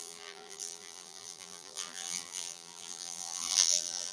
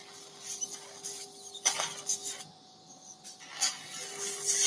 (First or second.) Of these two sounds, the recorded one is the second